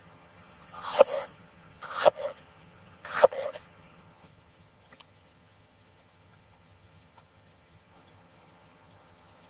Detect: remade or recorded remade